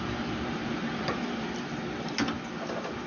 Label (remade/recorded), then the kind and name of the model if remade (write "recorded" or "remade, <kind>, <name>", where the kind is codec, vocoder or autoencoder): recorded